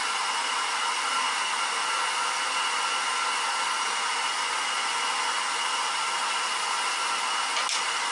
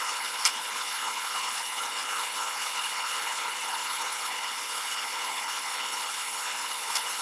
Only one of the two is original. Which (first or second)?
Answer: first